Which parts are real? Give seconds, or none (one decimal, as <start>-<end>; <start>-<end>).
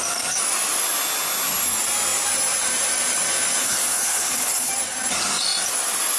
0.0-3.6; 4.7-6.2